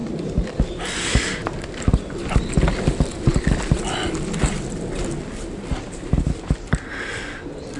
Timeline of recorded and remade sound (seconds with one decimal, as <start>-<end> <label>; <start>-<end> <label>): 0.0-7.8 recorded